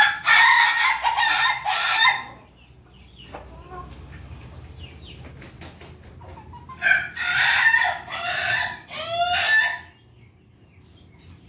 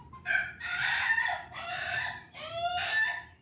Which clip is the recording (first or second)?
first